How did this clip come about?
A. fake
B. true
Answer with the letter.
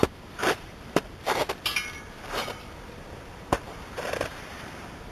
A